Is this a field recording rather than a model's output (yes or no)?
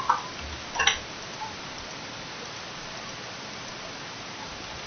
yes